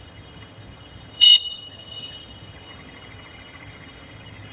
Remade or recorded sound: remade